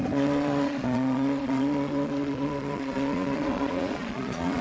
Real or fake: fake